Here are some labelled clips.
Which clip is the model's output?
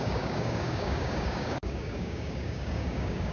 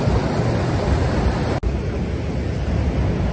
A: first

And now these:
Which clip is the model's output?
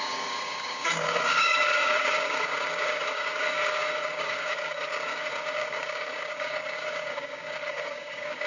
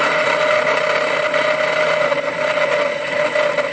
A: first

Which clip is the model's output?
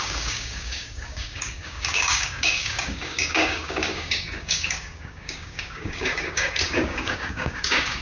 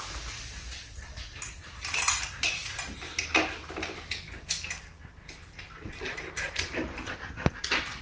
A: first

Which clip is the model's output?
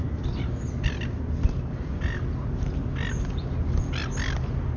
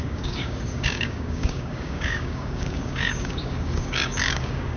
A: second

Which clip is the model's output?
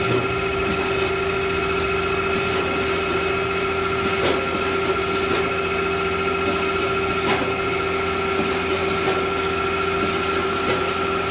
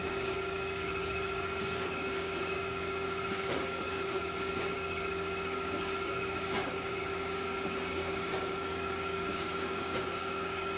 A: second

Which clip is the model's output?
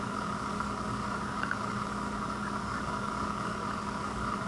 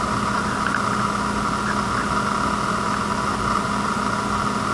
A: first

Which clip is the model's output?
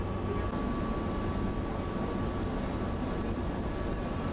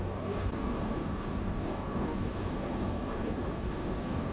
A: second